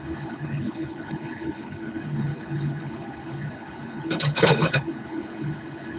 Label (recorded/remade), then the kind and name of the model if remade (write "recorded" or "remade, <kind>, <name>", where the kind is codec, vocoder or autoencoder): remade, codec, HILCodec